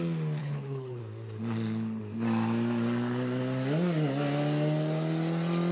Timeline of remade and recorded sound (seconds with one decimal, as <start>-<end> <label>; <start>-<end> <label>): 0.0-0.4 recorded; 0.4-1.0 remade; 1.0-5.7 recorded